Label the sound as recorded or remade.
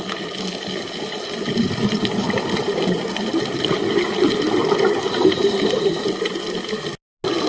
recorded